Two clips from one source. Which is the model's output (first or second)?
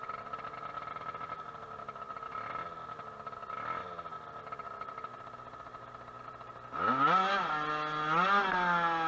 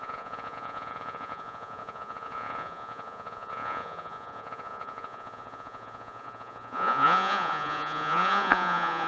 second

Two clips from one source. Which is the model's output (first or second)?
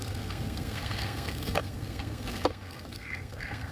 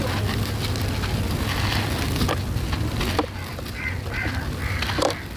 first